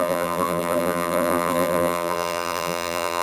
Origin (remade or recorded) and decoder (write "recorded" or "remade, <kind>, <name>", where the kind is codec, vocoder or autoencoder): remade, vocoder, BigVGAN v2